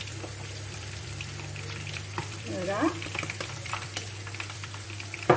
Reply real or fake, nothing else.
fake